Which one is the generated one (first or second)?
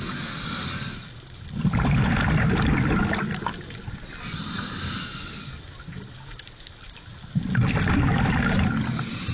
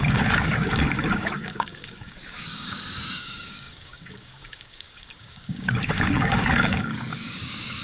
second